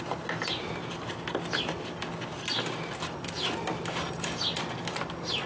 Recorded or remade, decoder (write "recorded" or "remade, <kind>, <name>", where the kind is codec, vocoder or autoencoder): recorded